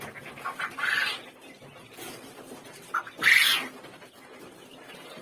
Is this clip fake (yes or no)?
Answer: no